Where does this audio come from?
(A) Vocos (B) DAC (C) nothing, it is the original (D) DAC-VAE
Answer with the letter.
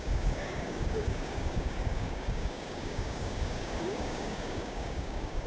B